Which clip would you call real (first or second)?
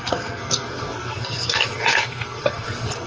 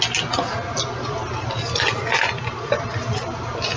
second